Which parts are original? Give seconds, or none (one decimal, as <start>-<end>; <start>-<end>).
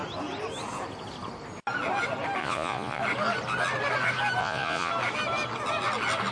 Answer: 0.0-2.4; 3.0-4.4; 4.9-6.3